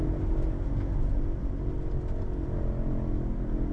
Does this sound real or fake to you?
real